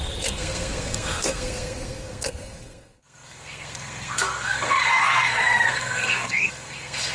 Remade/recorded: remade